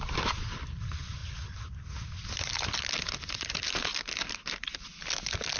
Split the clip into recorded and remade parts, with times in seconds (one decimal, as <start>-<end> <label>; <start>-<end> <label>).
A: 0.0-5.6 recorded